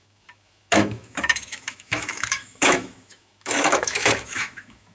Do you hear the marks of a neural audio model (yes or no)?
yes